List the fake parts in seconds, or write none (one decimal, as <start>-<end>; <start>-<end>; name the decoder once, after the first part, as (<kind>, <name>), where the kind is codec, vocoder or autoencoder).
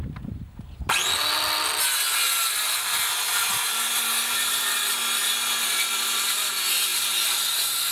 none